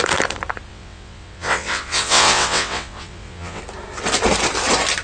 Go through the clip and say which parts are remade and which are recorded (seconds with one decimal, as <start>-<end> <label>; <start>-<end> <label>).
0.0-0.7 recorded; 0.7-3.6 remade; 3.6-5.0 recorded